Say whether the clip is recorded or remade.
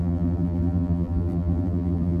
remade